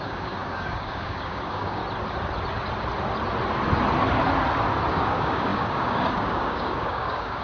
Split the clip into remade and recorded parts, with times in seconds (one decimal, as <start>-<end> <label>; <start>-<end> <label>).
0.0-1.8 remade; 1.8-4.9 recorded; 4.9-7.4 remade